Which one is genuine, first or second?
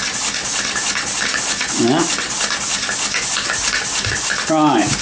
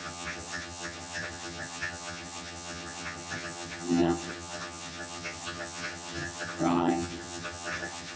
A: first